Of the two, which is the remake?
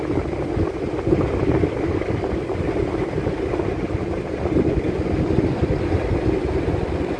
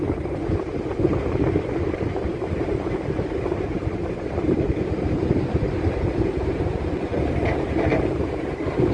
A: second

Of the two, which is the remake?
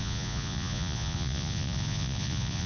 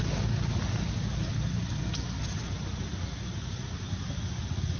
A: first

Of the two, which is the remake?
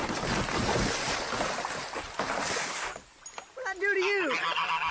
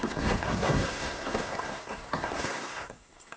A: second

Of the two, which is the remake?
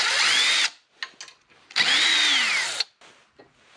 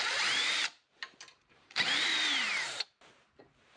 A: second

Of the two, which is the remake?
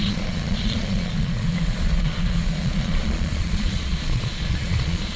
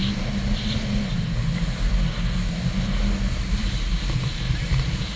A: first